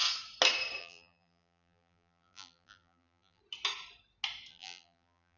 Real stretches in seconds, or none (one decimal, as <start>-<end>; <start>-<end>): 0.0-0.8; 3.4-4.5